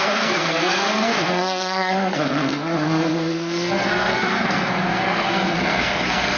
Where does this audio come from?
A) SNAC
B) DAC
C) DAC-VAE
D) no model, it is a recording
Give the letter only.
A